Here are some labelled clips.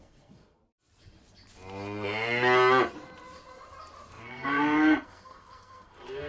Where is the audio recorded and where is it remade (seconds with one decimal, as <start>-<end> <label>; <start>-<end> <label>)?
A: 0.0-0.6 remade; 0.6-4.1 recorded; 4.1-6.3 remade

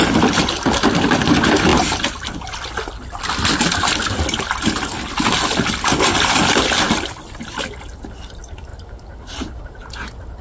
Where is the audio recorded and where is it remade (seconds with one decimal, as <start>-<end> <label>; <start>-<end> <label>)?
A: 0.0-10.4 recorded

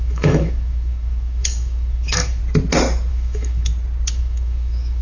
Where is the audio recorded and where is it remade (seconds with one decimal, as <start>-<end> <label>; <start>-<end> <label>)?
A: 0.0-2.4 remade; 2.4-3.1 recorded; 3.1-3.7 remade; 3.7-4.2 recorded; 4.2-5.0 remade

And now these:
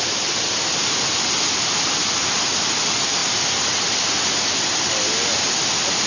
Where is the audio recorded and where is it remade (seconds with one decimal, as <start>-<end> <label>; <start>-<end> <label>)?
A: 0.0-6.1 recorded

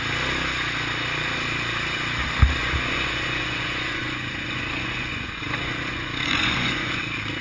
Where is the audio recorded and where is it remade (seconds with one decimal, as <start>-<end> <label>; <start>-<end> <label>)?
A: 0.0-2.6 recorded; 2.6-7.0 remade; 7.0-7.4 recorded